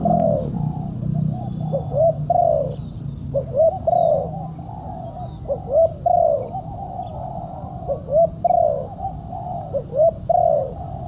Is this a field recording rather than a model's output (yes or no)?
yes